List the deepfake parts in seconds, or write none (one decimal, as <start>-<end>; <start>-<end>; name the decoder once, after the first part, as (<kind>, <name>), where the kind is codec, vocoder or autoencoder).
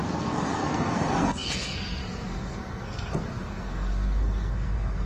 0.0-5.1 (codec, SNAC)